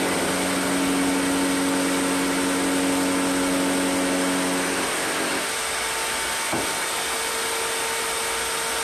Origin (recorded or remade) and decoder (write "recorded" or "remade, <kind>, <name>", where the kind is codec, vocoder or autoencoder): recorded